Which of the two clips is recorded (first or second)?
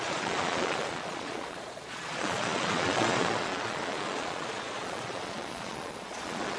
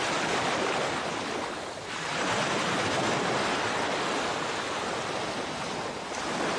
second